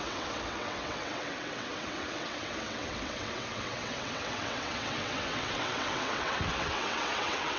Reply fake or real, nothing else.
fake